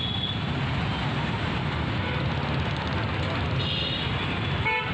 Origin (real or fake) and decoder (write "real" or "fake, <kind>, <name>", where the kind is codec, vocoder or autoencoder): real